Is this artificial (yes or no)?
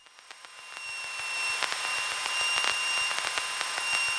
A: no